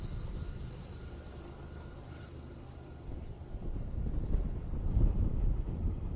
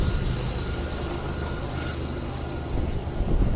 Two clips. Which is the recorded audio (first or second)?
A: second